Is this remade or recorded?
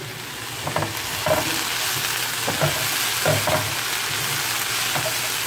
recorded